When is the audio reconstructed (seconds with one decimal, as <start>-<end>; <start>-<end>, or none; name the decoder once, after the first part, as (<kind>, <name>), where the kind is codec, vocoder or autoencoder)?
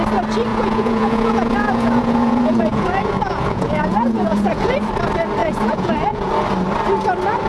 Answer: 0.5-4.9 (vocoder, Vocos); 5.4-6.3